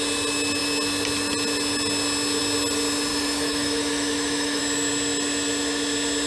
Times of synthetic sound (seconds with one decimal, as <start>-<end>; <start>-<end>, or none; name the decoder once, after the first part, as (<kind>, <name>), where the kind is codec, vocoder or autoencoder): 3.1-4.6 (autoencoder, DAC-VAE)